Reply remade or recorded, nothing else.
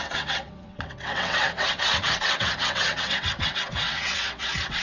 remade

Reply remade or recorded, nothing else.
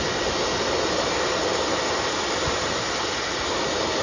recorded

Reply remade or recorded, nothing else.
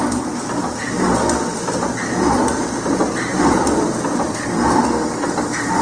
remade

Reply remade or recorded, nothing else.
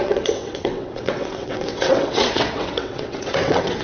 remade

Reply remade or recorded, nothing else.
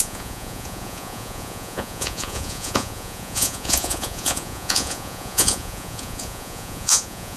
remade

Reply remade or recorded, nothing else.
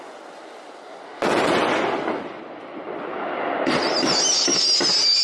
recorded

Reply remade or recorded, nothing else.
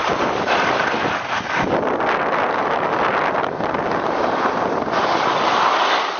recorded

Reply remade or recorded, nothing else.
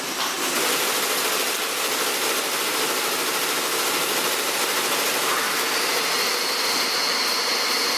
recorded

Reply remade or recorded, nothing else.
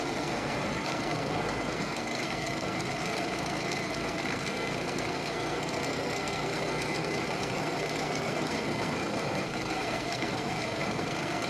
remade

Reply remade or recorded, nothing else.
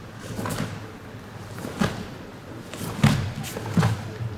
recorded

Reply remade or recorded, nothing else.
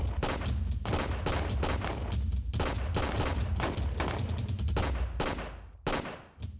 recorded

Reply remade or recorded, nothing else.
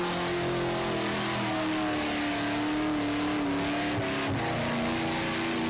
recorded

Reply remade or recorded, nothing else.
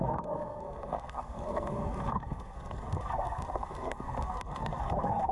remade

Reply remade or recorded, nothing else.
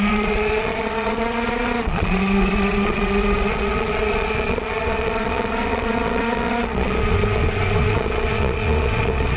remade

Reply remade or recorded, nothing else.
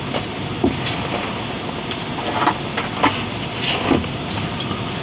recorded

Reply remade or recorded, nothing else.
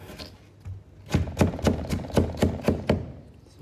recorded